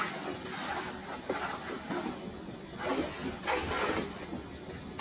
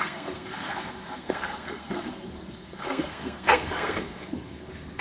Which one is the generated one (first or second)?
second